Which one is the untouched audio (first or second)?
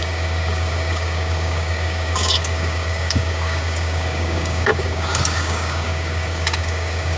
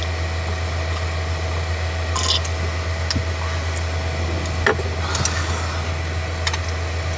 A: second